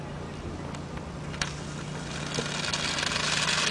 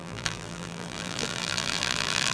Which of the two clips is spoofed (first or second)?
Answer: second